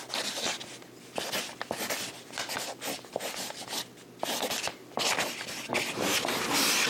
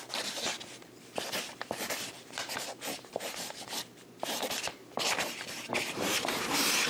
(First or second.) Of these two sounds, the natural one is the first